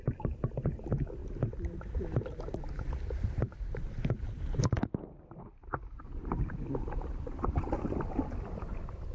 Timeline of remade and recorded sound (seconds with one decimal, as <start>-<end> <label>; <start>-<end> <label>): 0.0-1.2 recorded; 1.2-2.6 remade; 2.6-3.5 recorded; 3.5-7.6 remade; 7.6-9.1 recorded